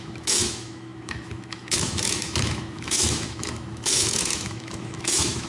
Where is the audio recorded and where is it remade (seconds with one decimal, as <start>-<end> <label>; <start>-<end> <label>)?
0.0-5.5 remade